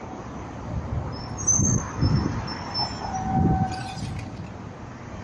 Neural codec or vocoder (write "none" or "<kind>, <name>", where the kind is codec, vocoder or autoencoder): none